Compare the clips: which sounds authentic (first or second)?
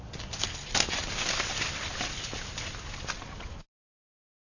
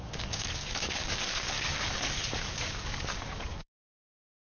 first